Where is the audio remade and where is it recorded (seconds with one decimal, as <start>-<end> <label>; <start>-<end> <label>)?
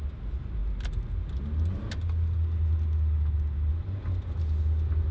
0.0-5.1 recorded